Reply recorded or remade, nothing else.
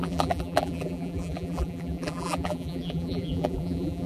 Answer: remade